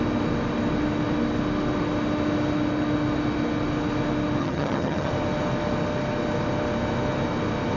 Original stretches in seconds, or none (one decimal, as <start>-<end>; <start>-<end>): 0.0-4.4; 5.1-7.8